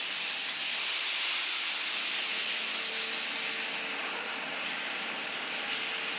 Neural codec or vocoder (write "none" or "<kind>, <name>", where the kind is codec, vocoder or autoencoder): none